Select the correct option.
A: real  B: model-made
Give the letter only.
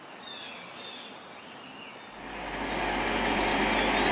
A